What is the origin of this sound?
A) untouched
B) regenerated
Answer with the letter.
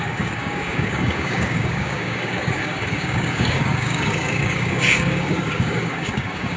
B